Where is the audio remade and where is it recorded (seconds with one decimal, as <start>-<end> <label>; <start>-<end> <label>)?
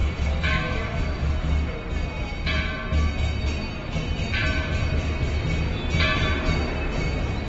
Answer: 0.0-1.3 remade; 1.3-7.5 recorded